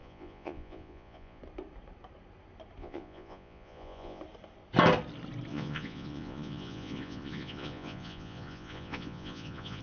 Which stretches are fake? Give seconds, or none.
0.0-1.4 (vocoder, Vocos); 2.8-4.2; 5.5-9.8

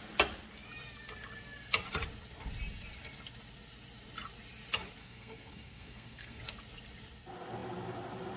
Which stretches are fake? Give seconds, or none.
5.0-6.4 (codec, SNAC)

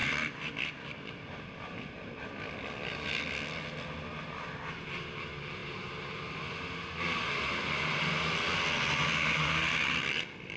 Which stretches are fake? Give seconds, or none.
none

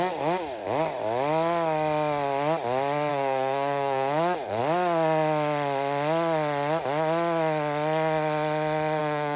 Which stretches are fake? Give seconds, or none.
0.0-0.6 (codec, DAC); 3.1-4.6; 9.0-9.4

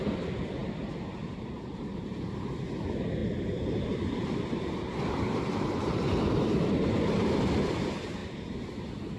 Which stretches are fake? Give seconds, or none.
0.0-9.2 (vocoder, BigVGAN v2)